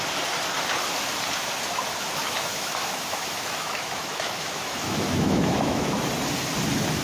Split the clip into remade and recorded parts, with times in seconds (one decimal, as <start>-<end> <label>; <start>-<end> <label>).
0.0-2.2 recorded; 2.2-6.0 remade; 6.0-7.0 recorded